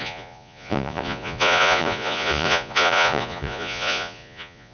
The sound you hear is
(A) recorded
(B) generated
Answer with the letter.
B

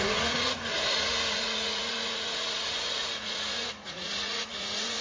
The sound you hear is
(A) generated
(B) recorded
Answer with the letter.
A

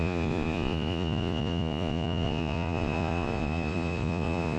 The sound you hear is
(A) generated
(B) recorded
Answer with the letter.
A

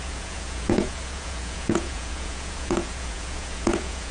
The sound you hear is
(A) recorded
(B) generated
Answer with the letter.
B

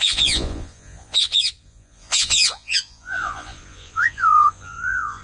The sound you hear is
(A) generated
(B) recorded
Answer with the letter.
A